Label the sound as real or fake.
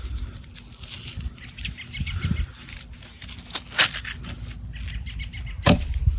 real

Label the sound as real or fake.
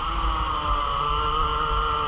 real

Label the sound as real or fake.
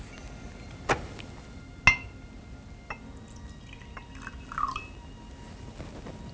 real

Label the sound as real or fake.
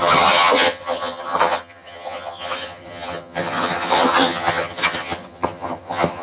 fake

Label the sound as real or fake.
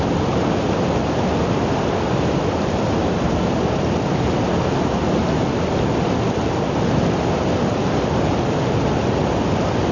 real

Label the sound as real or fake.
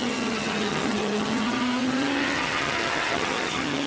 fake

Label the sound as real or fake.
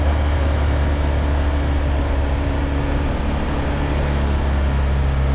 real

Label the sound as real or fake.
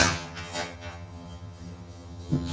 fake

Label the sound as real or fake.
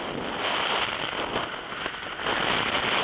real